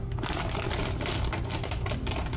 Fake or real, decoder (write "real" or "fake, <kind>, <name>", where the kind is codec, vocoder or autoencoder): real